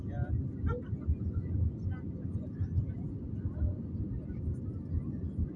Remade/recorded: recorded